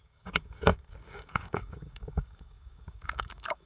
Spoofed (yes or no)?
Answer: yes